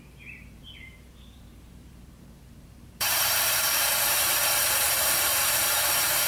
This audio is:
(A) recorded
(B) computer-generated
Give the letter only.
B